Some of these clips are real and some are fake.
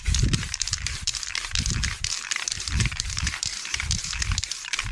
fake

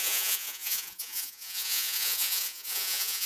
fake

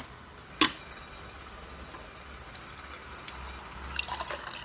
real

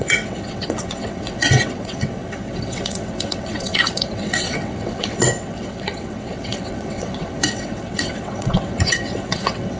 fake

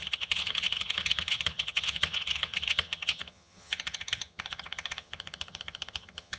fake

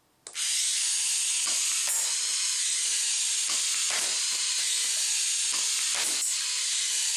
real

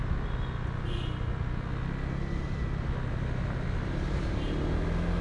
real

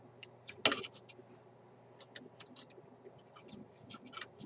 real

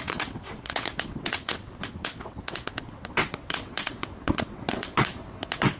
fake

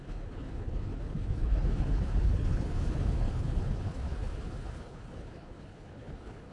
fake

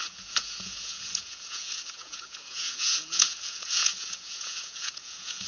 fake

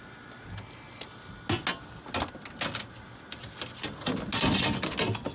real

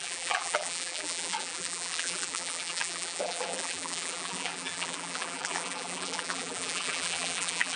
fake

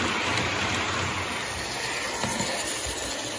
real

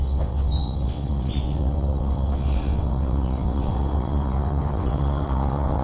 fake